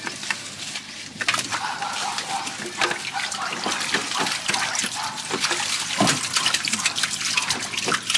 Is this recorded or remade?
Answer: recorded